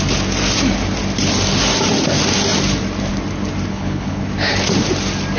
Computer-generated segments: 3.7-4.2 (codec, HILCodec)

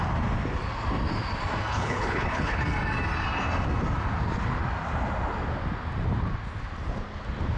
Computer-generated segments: 1.7-2.6 (codec, HILCodec)

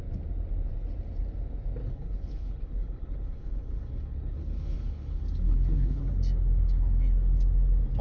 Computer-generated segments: 1.8-6.0 (codec, HILCodec)